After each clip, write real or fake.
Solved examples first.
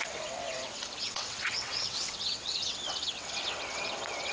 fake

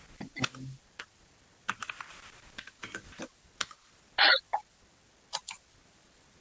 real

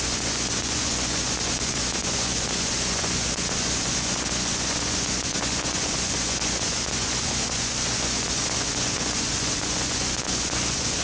fake